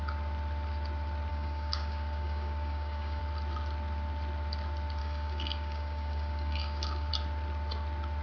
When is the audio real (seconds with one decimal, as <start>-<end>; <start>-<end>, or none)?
0.0-1.3; 3.2-5.0; 7.1-8.2